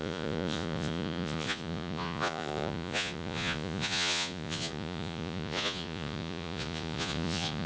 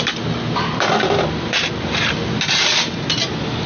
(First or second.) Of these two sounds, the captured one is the second